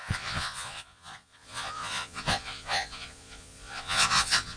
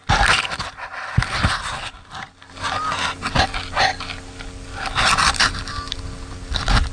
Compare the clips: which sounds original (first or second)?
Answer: second